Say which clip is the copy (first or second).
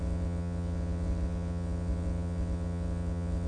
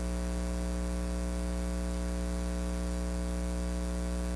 first